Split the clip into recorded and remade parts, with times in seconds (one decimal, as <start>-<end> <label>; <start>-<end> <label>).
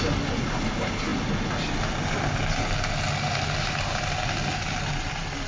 0.0-5.5 recorded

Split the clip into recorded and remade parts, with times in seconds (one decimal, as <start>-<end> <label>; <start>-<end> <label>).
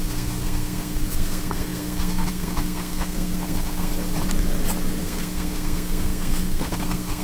0.0-3.9 remade; 3.9-5.0 recorded; 5.0-7.2 remade